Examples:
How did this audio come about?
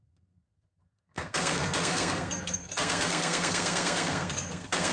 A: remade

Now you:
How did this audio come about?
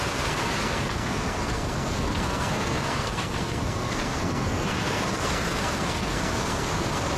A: remade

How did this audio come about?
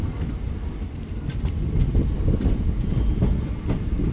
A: recorded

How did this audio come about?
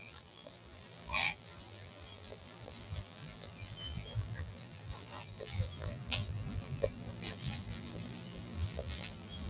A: remade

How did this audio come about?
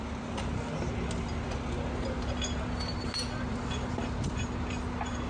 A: recorded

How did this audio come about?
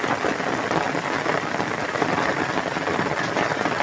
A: recorded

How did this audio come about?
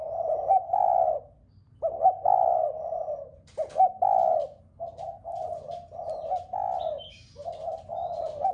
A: recorded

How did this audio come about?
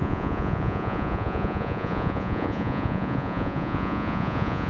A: remade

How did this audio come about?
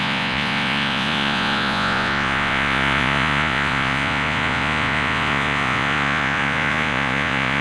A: remade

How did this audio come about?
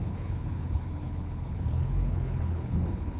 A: remade